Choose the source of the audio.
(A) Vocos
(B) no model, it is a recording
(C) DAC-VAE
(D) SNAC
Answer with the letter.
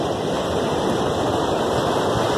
B